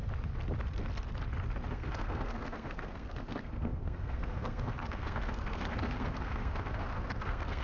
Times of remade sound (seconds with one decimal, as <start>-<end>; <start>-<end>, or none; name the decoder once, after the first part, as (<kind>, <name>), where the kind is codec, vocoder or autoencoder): 1.7-7.6 (codec, SNAC)

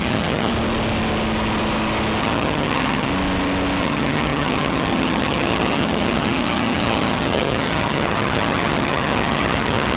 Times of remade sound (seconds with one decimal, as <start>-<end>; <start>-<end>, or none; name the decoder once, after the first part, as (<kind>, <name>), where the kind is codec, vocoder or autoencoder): 0.0-0.5 (vocoder, HiFi-GAN); 2.2-3.1; 3.8-10.0

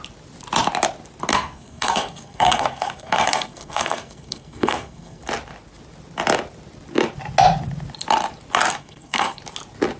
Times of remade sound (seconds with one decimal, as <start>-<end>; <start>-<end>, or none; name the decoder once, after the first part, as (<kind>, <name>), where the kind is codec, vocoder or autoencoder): 1.3-5.2 (codec, SNAC); 8.7-9.4

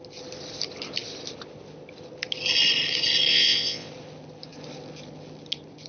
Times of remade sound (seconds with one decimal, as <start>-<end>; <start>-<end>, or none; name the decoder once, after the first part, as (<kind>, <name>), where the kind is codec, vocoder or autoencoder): 3.3-3.9 (vocoder, WaveNeXt)

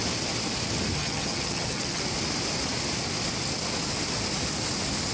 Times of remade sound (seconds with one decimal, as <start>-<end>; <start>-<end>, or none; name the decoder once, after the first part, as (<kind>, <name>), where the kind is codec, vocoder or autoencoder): 1.0-2.0 (vocoder, HiFi-GAN)

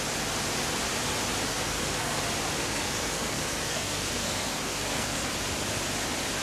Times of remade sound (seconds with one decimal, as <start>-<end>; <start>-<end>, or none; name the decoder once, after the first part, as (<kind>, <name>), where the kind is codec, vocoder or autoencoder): 1.5-2.2 (codec, SNAC); 2.6-5.3

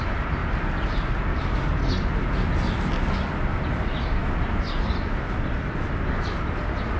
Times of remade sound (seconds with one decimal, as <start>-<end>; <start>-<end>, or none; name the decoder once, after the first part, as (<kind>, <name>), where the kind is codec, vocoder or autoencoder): none

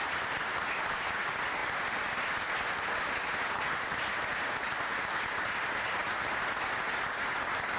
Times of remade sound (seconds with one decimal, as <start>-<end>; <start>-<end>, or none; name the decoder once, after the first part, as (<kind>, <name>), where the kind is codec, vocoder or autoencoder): none